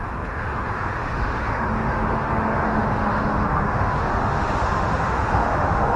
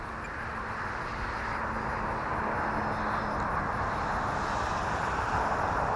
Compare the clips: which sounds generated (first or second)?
first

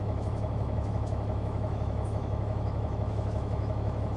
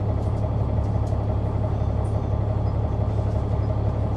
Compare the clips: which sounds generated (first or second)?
first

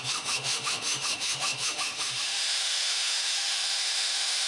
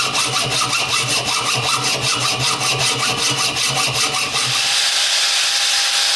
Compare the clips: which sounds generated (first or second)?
first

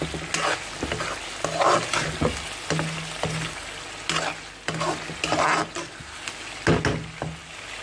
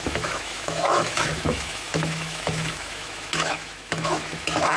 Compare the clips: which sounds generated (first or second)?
second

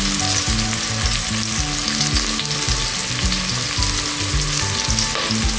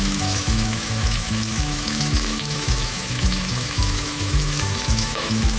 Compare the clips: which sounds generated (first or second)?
second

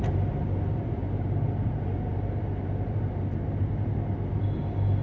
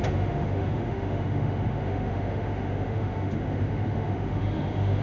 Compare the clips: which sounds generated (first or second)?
second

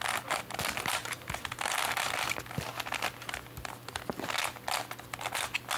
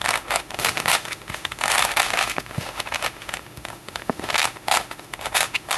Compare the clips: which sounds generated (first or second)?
second